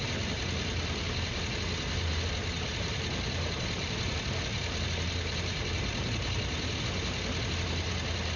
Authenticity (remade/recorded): recorded